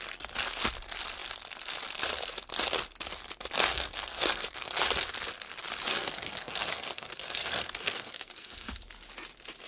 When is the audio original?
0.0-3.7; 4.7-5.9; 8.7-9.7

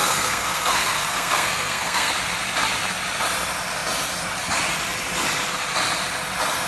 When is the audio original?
2.1-6.7

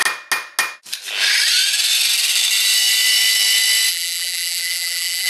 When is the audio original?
0.0-3.9

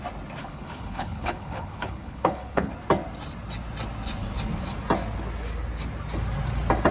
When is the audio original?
0.0-0.4; 2.7-6.9

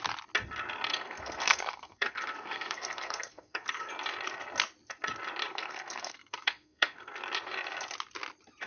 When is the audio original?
0.0-0.9; 3.9-5.5; 7.1-8.7

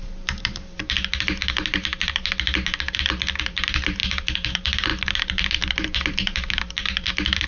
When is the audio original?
none

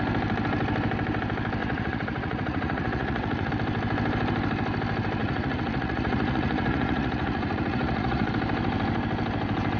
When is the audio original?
0.0-1.6; 3.5-5.2; 8.3-9.8

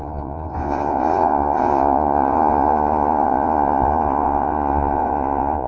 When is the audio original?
none